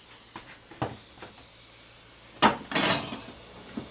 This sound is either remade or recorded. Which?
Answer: recorded